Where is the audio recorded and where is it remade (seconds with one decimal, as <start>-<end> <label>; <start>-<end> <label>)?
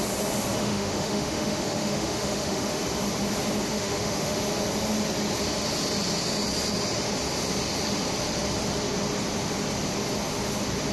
0.0-0.6 recorded; 0.6-2.8 remade; 2.8-3.7 recorded; 3.7-4.4 remade; 4.4-10.9 recorded